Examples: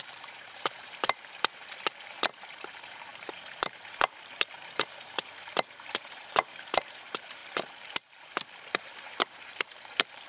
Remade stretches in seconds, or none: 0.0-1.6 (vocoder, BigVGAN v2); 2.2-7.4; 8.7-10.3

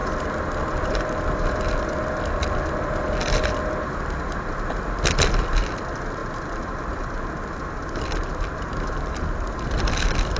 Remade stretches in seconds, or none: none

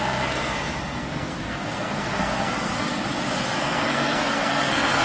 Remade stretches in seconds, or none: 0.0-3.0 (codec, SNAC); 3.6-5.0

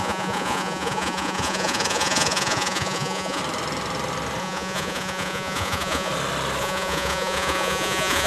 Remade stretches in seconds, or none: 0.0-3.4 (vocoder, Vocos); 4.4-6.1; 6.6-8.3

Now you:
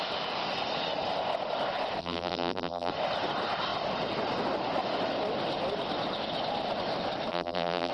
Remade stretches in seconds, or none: 2.0-2.9 (vocoder, BigVGAN v2); 7.3-7.9